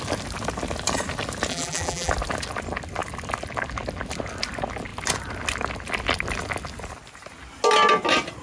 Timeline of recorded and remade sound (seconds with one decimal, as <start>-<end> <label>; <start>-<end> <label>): 0.0-1.5 recorded; 1.5-2.1 remade; 2.1-8.4 recorded